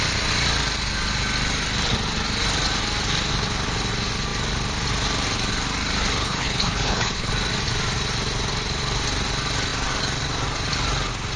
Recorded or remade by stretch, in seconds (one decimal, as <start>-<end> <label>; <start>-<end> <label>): 0.0-6.2 recorded; 6.2-7.3 remade; 7.3-11.4 recorded